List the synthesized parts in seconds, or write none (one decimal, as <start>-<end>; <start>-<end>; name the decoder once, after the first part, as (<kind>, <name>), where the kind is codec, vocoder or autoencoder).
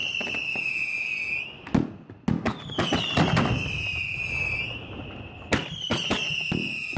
none